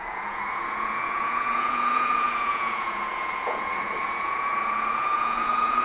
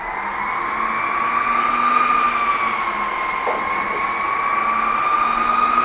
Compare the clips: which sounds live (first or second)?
second